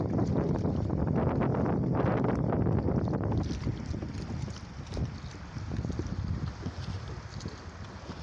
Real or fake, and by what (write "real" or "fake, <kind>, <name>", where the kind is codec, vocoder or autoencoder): real